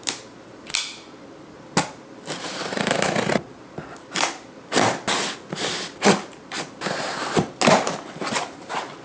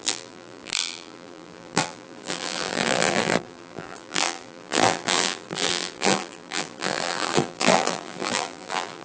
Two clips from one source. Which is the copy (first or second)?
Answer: second